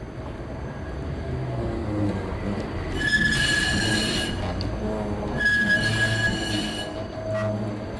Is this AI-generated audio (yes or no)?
no